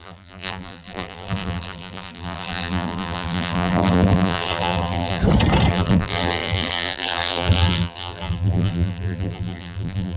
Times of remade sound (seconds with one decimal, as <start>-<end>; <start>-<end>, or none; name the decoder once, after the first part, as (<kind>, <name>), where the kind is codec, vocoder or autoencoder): 0.0-5.2 (vocoder, BigVGAN v2); 5.7-10.2